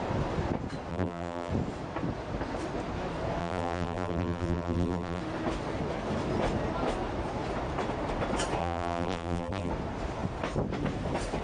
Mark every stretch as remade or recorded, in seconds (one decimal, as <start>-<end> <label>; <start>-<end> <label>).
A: 0.0-0.9 recorded; 0.9-1.5 remade; 1.5-3.4 recorded; 3.4-5.2 remade; 5.2-8.6 recorded; 8.6-9.7 remade; 9.7-11.4 recorded